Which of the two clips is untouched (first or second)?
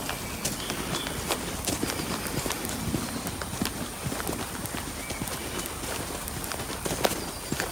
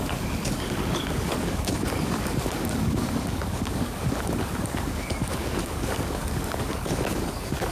first